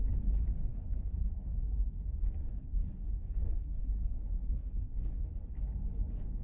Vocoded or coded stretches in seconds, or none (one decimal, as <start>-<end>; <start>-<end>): 0.7-1.9; 3.8-5.5

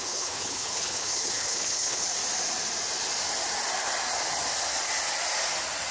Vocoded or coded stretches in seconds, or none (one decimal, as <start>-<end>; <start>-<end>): 0.0-2.1

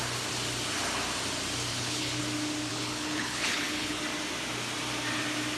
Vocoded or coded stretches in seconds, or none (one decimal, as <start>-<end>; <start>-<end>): 1.7-2.2; 2.7-4.0

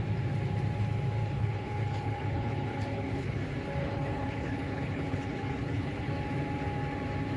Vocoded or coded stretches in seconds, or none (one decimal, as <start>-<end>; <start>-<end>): 1.2-3.4; 3.8-6.1

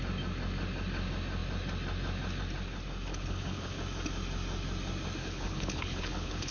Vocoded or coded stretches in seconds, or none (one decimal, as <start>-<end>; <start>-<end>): 3.1-3.8; 5.2-6.5

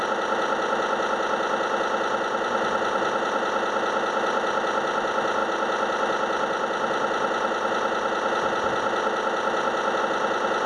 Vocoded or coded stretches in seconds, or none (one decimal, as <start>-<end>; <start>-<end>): none

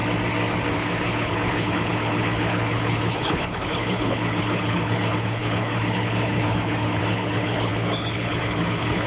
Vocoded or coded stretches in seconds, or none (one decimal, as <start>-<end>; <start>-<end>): 0.7-9.1